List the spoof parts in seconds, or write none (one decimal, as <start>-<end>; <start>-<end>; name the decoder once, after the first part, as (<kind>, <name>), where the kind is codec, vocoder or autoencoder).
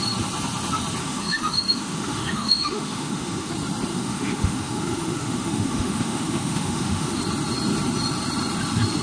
1.0-3.5 (autoencoder, DAC-VAE); 3.9-7.2